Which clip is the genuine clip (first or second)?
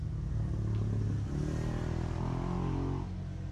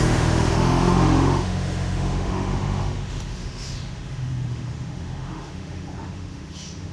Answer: first